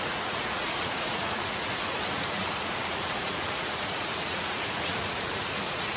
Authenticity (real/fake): fake